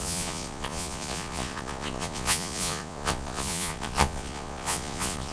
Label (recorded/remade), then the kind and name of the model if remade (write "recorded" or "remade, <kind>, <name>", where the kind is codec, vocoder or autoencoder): remade, vocoder, Vocos